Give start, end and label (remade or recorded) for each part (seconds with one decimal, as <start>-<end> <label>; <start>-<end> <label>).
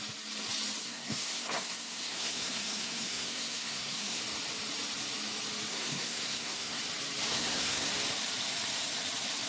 0.0-0.8 recorded; 0.8-4.2 remade; 4.2-5.7 recorded; 5.7-6.8 remade; 6.8-7.3 recorded; 7.3-7.9 remade; 7.9-9.5 recorded